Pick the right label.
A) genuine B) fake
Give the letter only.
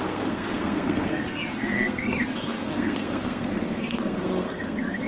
B